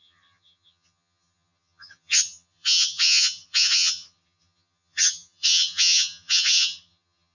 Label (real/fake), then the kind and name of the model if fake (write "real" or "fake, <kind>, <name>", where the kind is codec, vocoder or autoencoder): fake, vocoder, HiFi-GAN